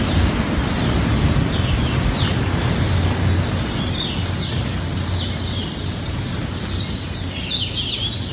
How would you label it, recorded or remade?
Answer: recorded